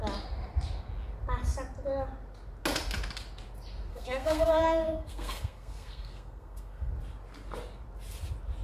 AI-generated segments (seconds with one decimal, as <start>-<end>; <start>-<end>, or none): 3.9-6.9